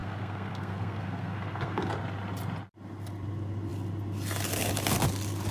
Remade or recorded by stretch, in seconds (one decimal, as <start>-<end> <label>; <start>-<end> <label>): 0.0-1.9 remade; 1.9-5.5 recorded